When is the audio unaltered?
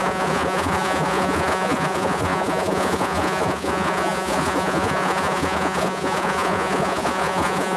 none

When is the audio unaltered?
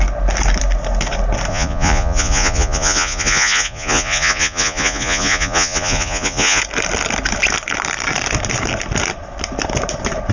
0.0-1.5; 6.6-10.3